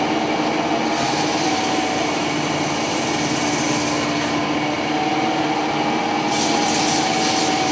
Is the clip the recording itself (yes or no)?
yes